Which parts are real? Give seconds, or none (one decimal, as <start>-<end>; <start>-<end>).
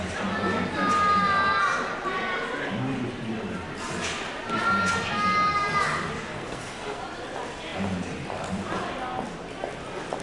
0.0-6.3; 7.0-10.2